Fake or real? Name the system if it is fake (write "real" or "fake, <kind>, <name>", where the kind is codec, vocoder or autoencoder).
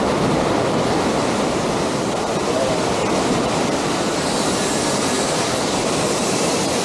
real